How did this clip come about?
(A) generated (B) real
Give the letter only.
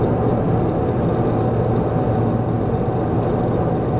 B